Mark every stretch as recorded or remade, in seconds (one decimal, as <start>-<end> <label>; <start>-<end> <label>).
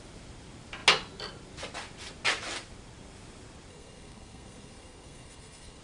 0.0-3.7 recorded; 3.7-5.8 remade